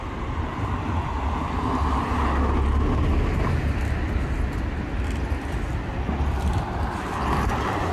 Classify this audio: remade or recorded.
recorded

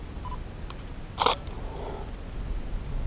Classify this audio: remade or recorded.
recorded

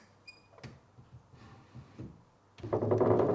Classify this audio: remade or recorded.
recorded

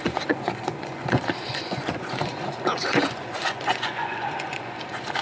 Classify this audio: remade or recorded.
remade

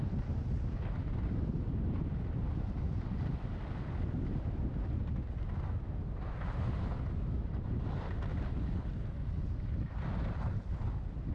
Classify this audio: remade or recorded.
recorded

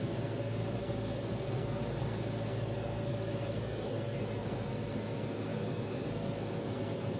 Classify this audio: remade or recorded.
remade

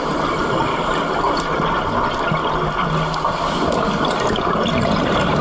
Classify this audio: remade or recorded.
recorded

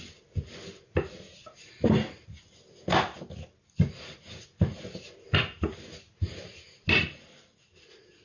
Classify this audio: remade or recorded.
recorded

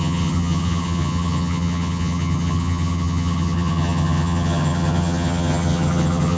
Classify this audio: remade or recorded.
remade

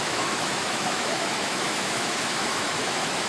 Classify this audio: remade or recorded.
remade